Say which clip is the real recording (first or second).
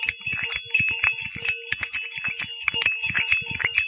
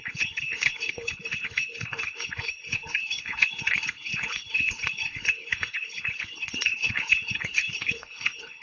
first